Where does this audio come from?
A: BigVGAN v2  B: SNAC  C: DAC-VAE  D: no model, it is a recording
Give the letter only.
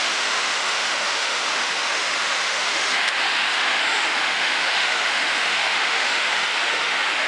C